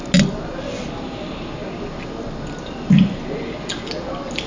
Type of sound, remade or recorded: recorded